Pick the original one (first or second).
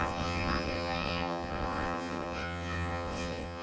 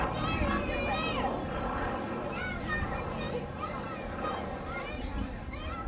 second